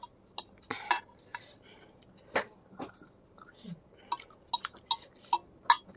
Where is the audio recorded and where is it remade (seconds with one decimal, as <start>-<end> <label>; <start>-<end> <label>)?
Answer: 0.0-6.0 recorded